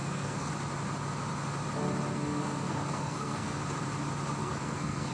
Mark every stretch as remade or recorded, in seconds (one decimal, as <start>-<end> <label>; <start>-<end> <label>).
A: 0.0-0.5 remade; 0.5-2.1 recorded; 2.1-3.6 remade; 3.6-4.4 recorded; 4.4-5.1 remade